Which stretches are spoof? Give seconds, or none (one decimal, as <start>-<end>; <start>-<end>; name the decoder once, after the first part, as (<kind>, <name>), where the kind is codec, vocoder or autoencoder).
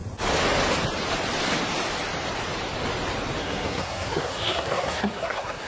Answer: 3.4-5.7 (codec, SNAC)